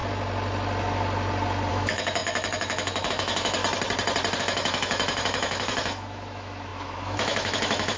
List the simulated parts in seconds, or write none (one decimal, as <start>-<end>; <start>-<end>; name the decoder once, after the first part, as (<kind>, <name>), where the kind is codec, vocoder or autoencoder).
1.7-3.6 (autoencoder, DAC-VAE); 4.4-8.0